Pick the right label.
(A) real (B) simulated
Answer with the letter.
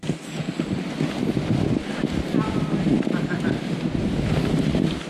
A